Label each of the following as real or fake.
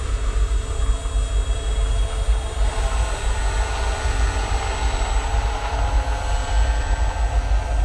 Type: real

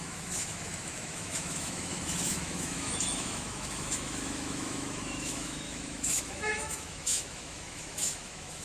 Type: fake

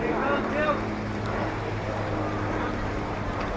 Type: real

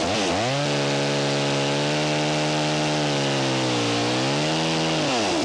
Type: real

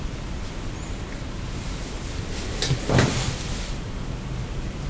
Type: real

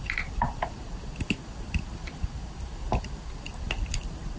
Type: real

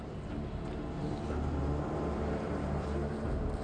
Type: fake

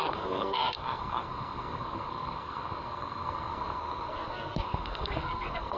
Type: fake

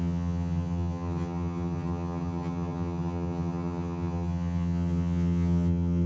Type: fake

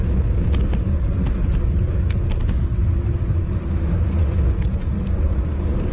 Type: real